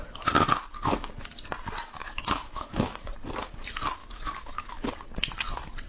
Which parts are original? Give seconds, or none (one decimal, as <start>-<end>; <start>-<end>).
0.0-2.0; 3.1-4.0; 4.9-5.9